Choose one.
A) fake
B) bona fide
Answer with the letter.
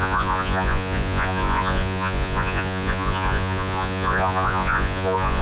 A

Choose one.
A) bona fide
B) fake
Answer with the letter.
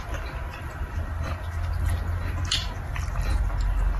A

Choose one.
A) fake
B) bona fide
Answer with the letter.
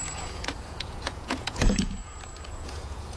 A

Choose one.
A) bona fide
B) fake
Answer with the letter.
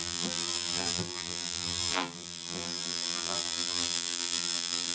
B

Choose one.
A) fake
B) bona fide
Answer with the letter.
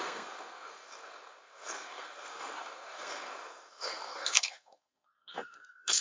A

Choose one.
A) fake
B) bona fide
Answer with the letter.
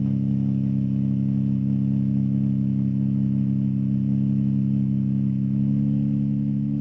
A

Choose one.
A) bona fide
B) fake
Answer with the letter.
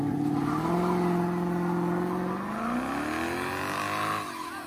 A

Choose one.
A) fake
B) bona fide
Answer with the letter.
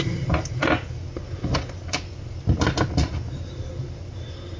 B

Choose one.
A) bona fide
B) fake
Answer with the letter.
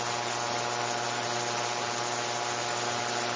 A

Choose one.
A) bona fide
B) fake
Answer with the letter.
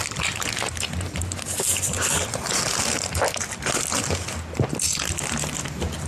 A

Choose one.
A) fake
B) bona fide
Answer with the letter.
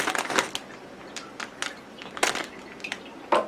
B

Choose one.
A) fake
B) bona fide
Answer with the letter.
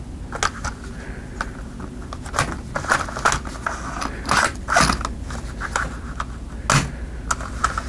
B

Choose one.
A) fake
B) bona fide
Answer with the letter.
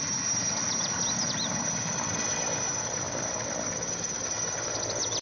B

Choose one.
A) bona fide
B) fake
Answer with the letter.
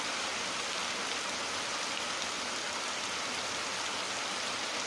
A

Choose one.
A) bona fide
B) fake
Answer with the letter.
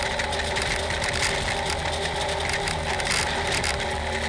A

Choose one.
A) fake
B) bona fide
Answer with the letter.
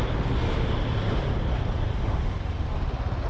B